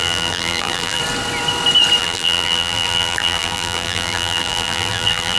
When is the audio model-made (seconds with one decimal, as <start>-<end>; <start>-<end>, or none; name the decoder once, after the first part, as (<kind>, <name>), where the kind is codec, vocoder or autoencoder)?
0.0-1.0 (vocoder, BigVGAN v2); 2.0-5.4